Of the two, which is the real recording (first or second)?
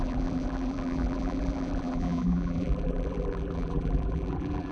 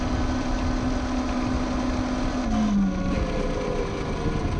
second